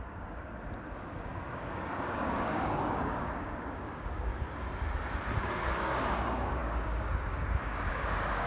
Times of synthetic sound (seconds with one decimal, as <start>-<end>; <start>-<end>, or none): 0.0-4.3; 5.4-8.5